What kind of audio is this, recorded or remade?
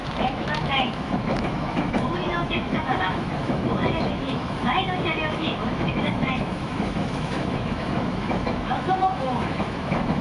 remade